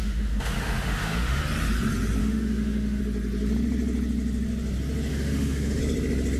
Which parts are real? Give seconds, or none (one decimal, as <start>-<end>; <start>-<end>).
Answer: 1.4-2.2; 3.0-5.1; 5.8-6.4